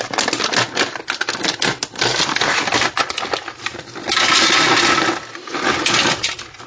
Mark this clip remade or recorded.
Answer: recorded